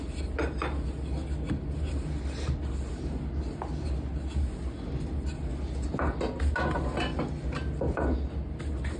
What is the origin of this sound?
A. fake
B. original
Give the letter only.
B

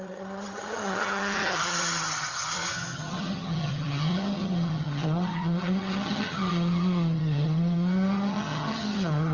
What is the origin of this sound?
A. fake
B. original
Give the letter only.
A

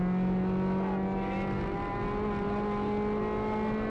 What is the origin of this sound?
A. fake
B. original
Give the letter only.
B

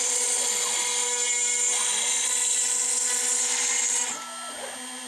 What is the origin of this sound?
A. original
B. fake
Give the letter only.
A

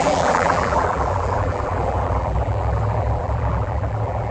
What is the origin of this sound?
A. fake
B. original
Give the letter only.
A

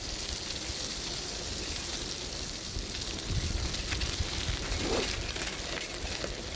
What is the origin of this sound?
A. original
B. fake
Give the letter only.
A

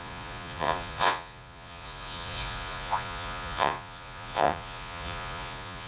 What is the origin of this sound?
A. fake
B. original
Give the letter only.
A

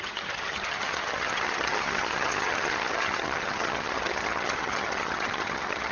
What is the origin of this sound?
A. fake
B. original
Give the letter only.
A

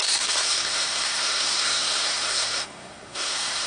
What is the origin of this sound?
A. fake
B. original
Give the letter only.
A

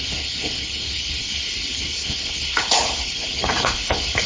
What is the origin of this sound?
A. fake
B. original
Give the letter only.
A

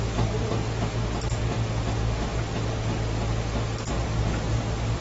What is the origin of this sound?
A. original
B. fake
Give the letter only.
A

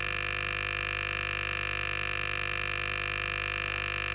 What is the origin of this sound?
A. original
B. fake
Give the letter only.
A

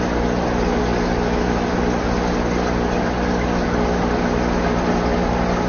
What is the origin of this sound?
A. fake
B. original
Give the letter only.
B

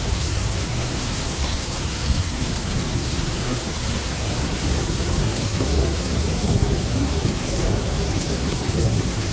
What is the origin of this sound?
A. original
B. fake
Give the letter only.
B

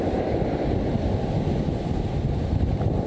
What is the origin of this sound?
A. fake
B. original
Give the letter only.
B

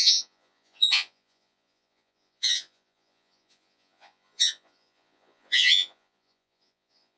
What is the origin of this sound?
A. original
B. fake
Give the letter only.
B